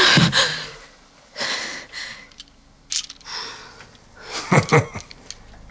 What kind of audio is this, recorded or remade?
recorded